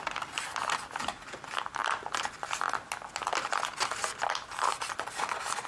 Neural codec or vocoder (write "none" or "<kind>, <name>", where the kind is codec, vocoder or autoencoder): none